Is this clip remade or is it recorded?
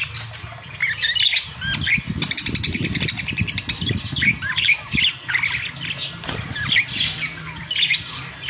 recorded